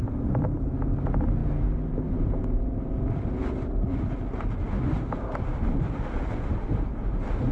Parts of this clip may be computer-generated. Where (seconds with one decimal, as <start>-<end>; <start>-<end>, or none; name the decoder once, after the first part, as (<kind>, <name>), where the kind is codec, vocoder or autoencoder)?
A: none